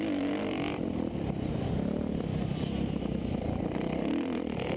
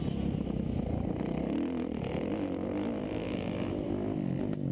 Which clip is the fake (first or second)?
first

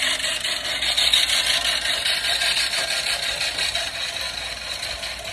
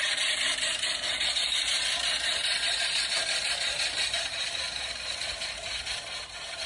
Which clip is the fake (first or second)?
second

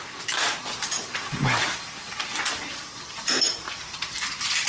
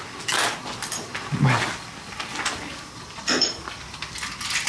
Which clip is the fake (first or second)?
first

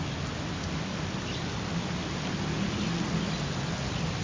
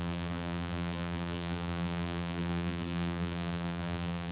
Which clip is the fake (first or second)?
second